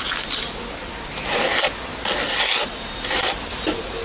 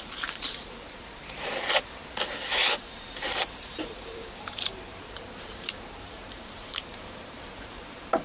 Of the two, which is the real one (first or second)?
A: first